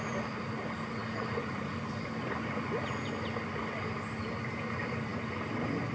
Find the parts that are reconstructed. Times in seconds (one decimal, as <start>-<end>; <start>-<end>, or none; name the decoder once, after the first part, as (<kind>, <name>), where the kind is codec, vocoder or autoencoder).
none